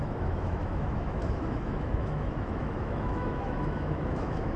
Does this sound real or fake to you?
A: fake